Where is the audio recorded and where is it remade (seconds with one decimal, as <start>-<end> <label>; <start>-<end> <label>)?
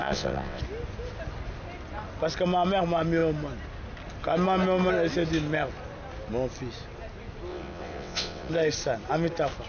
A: 0.0-0.6 remade; 0.6-7.5 recorded; 7.5-8.5 remade; 8.5-9.7 recorded